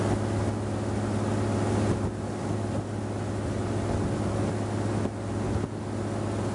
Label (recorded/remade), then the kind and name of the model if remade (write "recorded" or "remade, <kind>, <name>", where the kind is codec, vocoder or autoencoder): recorded